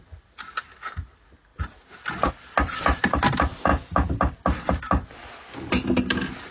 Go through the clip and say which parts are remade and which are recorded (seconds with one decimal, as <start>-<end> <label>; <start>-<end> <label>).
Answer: 0.0-6.5 recorded